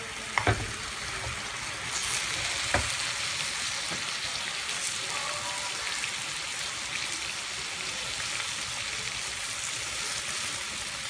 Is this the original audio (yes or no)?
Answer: yes